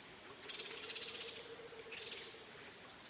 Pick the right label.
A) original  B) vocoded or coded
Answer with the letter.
A